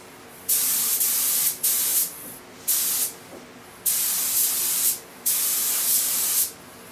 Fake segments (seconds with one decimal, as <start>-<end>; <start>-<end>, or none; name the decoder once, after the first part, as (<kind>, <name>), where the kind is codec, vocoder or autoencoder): 5.1-6.4 (vocoder, BigVGAN v2)